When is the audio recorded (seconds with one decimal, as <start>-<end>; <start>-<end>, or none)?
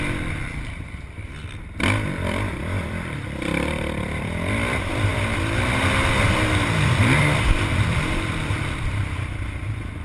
5.1-7.2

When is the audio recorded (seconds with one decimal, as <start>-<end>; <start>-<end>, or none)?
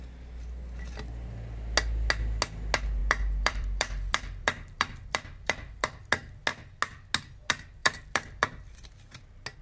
0.0-3.0; 6.1-7.8; 9.0-9.6